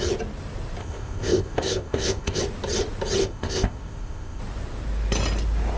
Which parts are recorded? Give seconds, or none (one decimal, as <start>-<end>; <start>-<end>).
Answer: 0.0-0.8; 2.4-3.2; 4.4-5.8